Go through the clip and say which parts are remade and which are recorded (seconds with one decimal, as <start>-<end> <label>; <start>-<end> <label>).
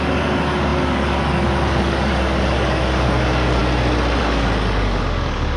0.0-3.6 remade; 3.6-4.2 recorded; 4.2-5.6 remade